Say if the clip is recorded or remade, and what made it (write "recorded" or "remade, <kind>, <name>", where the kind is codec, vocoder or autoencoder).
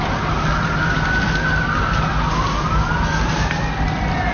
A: recorded